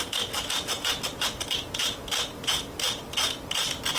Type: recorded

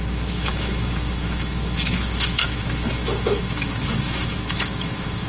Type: remade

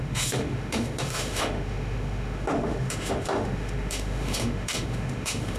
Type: remade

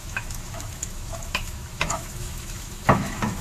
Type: remade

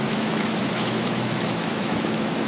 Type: remade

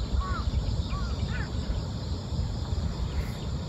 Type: recorded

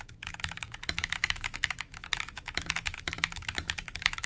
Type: remade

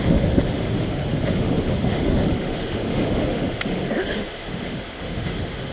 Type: remade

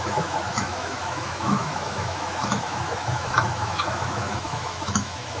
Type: remade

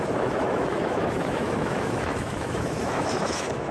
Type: remade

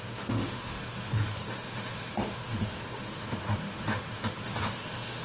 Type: remade